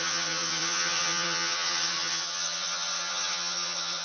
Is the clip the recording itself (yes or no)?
no